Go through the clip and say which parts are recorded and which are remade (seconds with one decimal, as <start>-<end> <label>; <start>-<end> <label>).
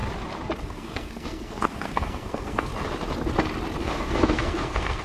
0.0-0.6 recorded; 0.6-2.7 remade; 2.7-3.8 recorded; 3.8-5.0 remade